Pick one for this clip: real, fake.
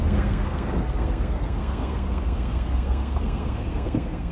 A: fake